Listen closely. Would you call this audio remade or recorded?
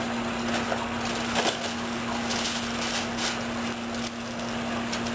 recorded